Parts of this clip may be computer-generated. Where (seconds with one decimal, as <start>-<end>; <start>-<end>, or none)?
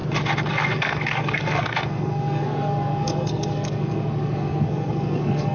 0.5-5.5